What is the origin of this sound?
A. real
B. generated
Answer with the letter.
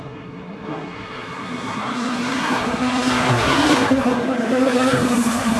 B